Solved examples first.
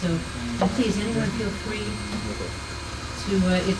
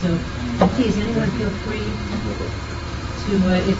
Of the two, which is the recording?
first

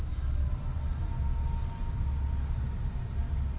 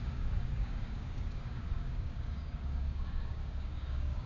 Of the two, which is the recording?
first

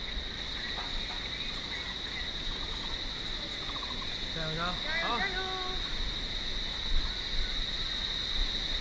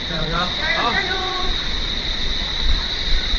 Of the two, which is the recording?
first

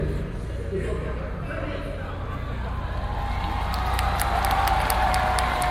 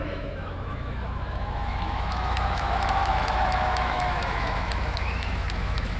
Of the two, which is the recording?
first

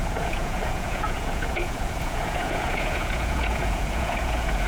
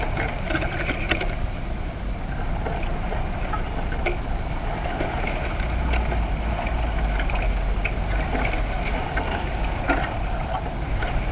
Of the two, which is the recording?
second